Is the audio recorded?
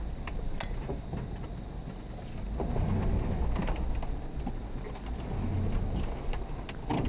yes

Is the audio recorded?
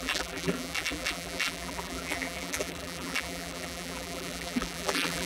no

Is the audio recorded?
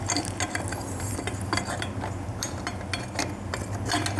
yes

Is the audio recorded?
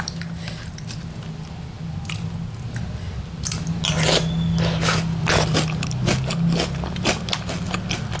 yes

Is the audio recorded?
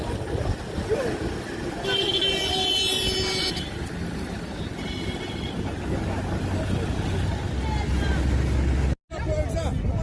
yes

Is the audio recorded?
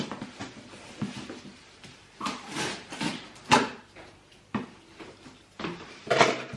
no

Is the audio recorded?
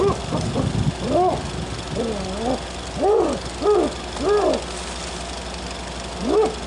yes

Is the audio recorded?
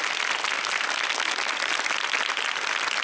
yes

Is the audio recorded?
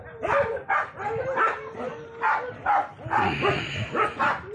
yes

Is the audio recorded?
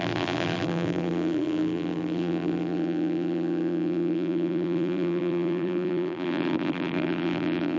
no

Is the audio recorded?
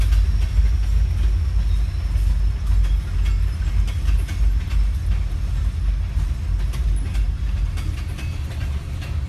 yes